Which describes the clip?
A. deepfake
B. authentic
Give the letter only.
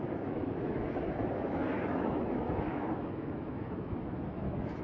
A